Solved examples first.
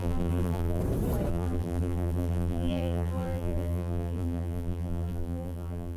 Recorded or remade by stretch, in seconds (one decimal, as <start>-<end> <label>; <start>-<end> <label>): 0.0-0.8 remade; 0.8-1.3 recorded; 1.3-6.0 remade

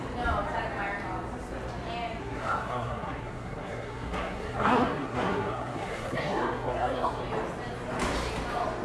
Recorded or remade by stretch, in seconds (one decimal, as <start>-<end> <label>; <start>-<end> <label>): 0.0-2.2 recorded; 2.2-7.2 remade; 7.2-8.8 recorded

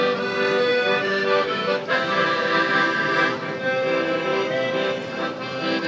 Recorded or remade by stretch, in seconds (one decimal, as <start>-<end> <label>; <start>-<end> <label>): 0.0-0.7 recorded; 0.7-2.2 remade; 2.2-5.9 recorded